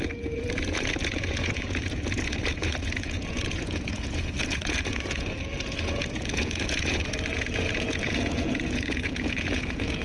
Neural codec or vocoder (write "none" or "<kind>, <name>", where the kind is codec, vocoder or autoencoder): vocoder, Vocos